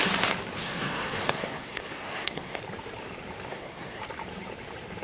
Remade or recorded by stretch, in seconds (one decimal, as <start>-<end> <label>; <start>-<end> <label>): 0.0-0.6 recorded; 0.6-2.6 remade; 2.6-3.5 recorded; 3.5-4.0 remade; 4.0-5.0 recorded